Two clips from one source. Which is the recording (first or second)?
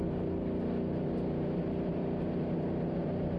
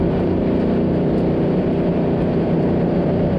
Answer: first